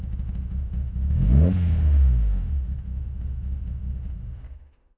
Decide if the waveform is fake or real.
fake